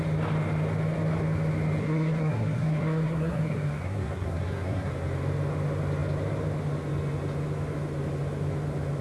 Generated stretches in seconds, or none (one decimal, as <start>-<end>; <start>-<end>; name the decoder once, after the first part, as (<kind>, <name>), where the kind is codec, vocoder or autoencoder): 1.8-4.9 (codec, SNAC)